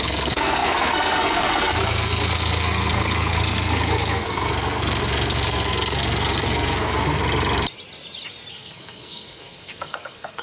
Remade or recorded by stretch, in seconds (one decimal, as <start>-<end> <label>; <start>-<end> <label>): 0.0-7.2 remade; 7.2-8.5 recorded; 8.5-10.4 remade